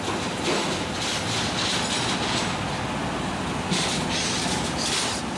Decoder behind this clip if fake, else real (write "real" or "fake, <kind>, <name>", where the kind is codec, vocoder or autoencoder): real